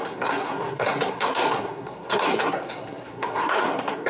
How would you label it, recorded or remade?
remade